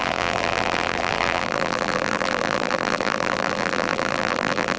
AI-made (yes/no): yes